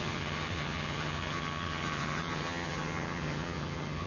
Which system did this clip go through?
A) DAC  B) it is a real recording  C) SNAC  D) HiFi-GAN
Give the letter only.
D